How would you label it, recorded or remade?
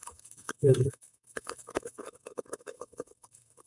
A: remade